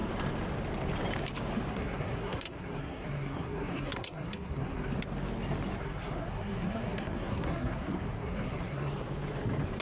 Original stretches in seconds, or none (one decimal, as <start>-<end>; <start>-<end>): 0.0-1.7; 4.9-5.8; 8.9-9.8